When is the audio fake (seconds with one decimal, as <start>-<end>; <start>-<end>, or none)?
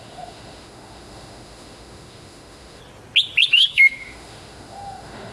0.0-2.8; 3.5-5.3